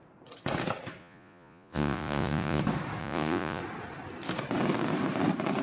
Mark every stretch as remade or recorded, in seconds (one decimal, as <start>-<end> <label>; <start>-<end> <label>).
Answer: 0.0-1.0 recorded; 1.0-2.6 remade; 2.6-3.0 recorded; 3.0-3.6 remade; 3.6-5.6 recorded